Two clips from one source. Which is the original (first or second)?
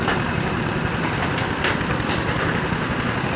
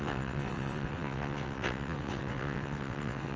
first